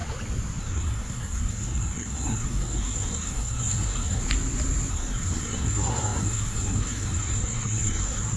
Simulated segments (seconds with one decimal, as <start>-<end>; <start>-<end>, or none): 0.6-4.2; 4.9-8.4